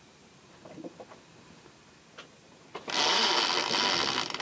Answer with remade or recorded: recorded